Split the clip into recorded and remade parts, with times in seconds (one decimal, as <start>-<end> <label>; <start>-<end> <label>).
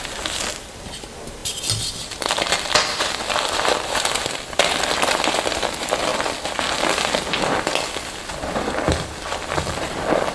0.0-10.3 recorded